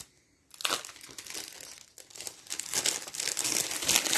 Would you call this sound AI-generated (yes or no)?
no